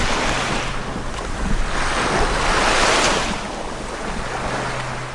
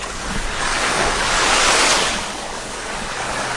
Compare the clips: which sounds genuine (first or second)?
first